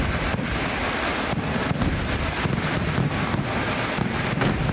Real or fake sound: real